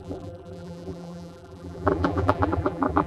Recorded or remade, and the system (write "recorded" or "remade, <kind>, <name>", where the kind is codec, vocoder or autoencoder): remade, vocoder, BigVGAN v2